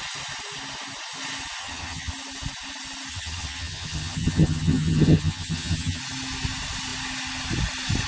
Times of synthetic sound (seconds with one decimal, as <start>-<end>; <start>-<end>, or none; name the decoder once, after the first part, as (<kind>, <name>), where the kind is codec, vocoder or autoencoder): 1.6-2.1 (vocoder, HiFi-GAN); 3.1-6.0